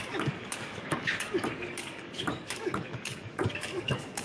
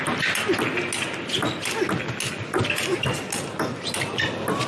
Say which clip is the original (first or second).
second